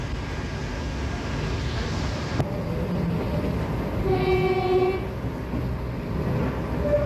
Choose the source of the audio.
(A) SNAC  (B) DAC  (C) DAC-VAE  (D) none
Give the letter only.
D